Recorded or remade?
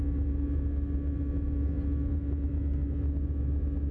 recorded